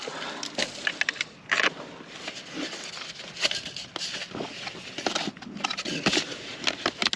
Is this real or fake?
real